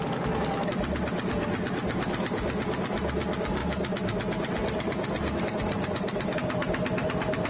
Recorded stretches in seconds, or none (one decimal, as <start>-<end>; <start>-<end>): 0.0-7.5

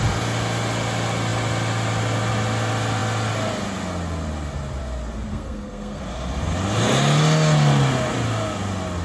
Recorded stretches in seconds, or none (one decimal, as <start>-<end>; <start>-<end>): 0.0-5.3; 6.0-9.0

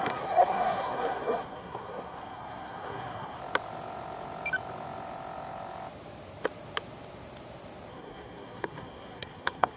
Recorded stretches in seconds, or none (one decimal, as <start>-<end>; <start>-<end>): 3.4-7.9

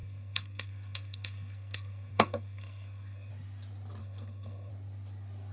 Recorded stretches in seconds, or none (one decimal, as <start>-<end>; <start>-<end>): 3.3-4.0; 4.7-5.5

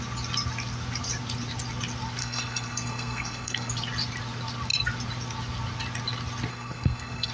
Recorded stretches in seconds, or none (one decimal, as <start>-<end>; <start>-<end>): 0.0-2.2; 3.7-6.5

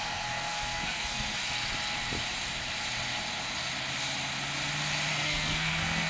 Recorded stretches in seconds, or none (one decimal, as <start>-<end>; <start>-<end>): 1.4-5.1